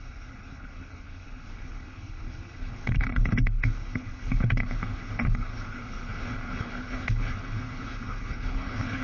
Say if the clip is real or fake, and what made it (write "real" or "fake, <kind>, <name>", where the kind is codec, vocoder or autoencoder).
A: fake, codec, HILCodec